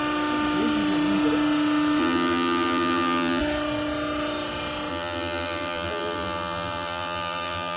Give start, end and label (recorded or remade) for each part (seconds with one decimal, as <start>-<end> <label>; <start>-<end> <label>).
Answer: 0.0-2.0 recorded; 2.0-3.4 remade; 3.4-4.9 recorded; 4.9-7.8 remade